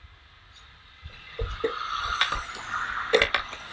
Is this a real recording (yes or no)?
yes